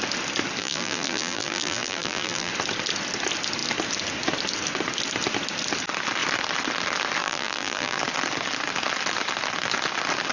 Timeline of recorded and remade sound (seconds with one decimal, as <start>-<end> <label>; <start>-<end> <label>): 0.0-0.6 recorded; 0.6-2.5 remade; 2.5-7.2 recorded; 7.2-8.0 remade; 8.0-10.3 recorded